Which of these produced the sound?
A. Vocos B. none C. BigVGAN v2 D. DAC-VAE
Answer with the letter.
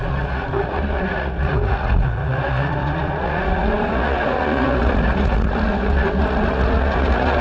A